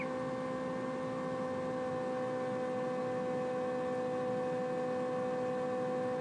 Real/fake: real